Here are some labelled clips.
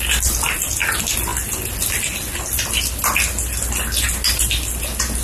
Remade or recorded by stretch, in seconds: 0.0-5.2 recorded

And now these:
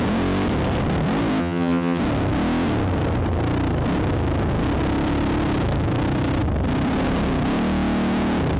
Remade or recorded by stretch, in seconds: 0.0-1.4 recorded; 1.4-2.0 remade; 2.0-8.6 recorded

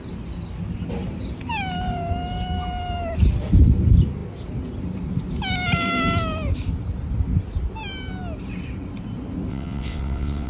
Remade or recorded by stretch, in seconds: 0.0-9.5 recorded; 9.5-10.5 remade

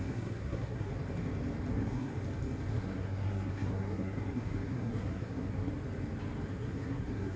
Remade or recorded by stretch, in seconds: 0.0-0.9 remade; 0.9-1.7 recorded; 1.7-2.1 remade; 2.1-2.7 recorded; 2.7-5.7 remade; 5.7-6.5 recorded; 6.5-7.4 remade

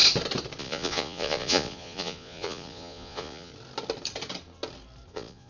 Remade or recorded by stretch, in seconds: 0.0-0.6 recorded; 0.6-3.5 remade; 3.5-5.1 recorded; 5.1-5.5 remade